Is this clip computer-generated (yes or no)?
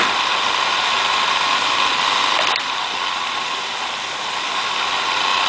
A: no